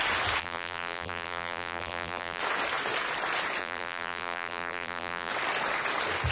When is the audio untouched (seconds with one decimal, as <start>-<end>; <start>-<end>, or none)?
0.0-0.4; 2.4-3.6; 5.3-6.3